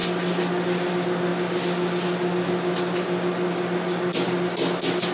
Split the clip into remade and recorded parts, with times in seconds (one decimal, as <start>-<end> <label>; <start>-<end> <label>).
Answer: 0.0-5.1 recorded